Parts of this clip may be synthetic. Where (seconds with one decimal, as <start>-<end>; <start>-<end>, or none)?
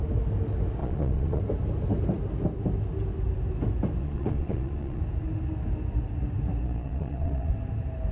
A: 0.8-1.4; 4.0-5.0; 6.6-7.5